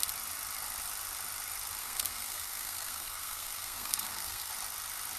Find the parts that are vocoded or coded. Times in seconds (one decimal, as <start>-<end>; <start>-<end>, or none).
1.8-4.5